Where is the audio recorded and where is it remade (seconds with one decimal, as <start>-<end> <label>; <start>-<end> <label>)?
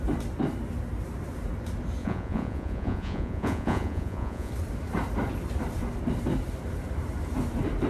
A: 0.0-2.0 recorded; 2.0-4.5 remade; 4.5-7.9 recorded